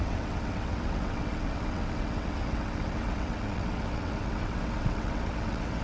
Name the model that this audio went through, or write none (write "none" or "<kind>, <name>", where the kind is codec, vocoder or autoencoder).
vocoder, WaveNeXt